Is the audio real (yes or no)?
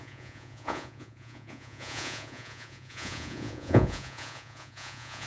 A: no